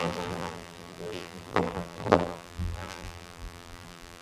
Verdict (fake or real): fake